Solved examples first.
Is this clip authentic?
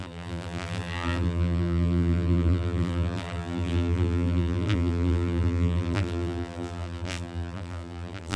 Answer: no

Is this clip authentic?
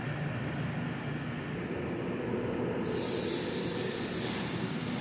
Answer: yes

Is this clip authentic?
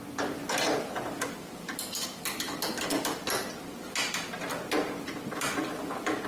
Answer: yes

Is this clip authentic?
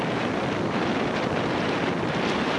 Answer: no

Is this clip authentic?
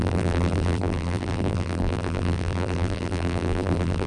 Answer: no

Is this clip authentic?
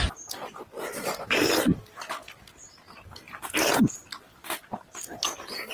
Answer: yes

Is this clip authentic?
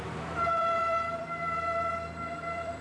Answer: no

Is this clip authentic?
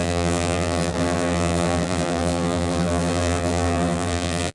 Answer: no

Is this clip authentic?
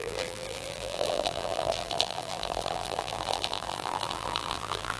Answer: no